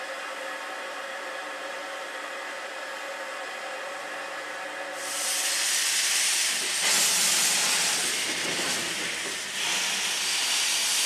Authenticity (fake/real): real